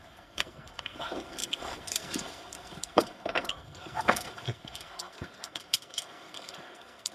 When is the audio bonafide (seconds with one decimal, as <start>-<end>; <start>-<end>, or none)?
none